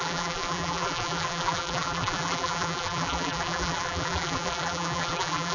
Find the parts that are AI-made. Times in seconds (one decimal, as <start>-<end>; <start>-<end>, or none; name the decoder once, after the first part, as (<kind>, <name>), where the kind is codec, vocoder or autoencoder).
0.0-5.5 (vocoder, BigVGAN v2)